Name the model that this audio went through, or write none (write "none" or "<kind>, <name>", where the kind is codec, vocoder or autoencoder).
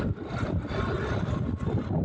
none